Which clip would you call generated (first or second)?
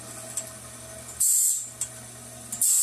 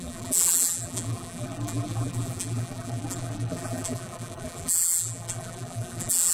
second